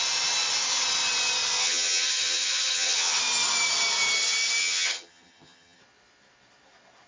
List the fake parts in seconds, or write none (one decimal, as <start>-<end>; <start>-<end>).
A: 1.6-3.2; 4.6-5.8